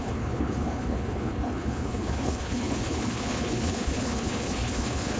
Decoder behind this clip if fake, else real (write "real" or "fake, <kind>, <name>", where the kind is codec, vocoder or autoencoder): fake, codec, HILCodec